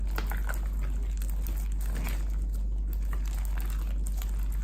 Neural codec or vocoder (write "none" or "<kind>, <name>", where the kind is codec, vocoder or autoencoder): none